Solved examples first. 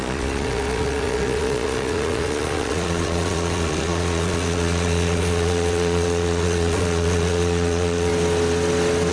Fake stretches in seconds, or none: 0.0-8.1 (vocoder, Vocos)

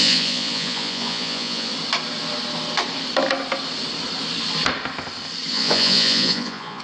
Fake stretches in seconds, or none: 0.0-1.7 (vocoder, Vocos); 5.5-6.8

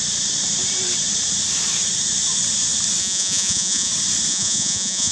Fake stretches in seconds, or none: 3.0-3.9 (vocoder, Vocos); 4.3-5.1